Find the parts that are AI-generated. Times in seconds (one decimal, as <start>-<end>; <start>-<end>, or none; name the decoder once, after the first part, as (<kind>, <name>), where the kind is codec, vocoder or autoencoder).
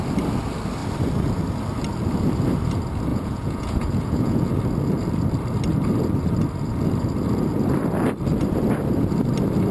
3.1-4.5 (vocoder, Vocos)